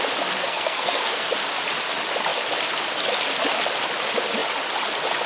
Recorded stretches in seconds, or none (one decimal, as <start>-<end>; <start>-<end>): 0.0-0.4; 1.3-5.3